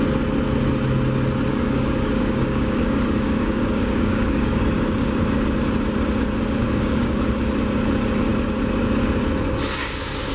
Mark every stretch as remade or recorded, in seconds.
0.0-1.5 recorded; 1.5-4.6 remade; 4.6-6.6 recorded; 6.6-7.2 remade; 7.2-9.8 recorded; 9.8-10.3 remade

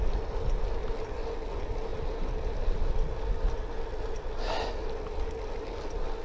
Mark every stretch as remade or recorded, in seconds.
0.0-6.2 recorded

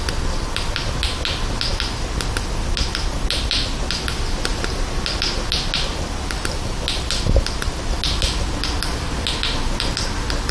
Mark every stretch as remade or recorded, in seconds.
0.0-10.5 recorded

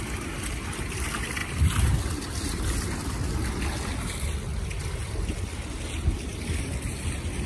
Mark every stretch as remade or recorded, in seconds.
0.0-7.5 recorded

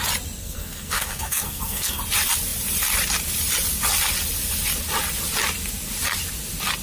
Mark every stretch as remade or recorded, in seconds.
0.0-0.4 recorded; 0.4-2.0 remade; 2.0-6.8 recorded